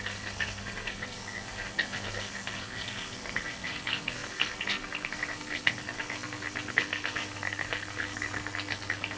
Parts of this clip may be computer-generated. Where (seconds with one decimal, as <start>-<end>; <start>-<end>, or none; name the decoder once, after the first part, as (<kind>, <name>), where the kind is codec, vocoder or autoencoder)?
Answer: 0.0-9.2 (codec, SNAC)

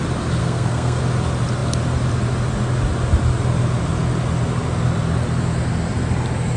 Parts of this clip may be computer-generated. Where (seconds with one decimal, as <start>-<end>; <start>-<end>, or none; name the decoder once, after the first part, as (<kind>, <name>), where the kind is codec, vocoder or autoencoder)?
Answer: 0.4-1.0 (codec, SNAC)

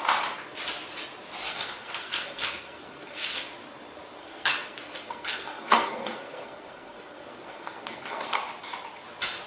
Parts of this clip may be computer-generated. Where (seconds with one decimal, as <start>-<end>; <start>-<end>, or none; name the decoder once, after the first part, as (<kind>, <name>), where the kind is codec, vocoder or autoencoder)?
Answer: 1.4-3.4 (codec, SNAC); 4.2-8.4